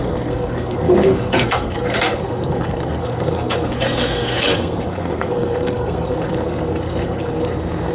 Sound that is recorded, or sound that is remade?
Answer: remade